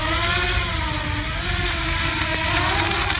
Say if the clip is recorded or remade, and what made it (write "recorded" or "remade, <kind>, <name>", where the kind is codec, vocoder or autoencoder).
recorded